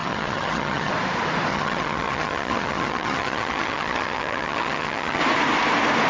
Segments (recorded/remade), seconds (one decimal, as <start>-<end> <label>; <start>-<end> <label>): 0.0-0.9 remade; 0.9-1.5 recorded; 1.5-5.2 remade; 5.2-6.1 recorded